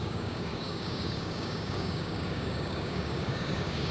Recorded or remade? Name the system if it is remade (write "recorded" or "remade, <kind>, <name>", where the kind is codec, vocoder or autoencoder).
remade, codec, DAC